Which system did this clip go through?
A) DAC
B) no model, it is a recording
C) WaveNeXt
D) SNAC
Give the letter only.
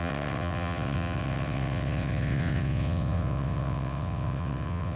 C